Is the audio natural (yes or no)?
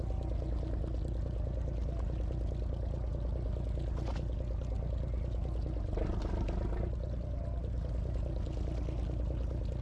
yes